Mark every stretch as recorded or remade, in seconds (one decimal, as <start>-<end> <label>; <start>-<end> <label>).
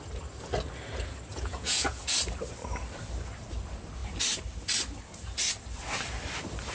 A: 0.0-1.3 recorded; 1.3-2.0 remade; 2.0-6.7 recorded